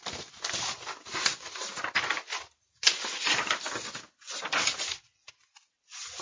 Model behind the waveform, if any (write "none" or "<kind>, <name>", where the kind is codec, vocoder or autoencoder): none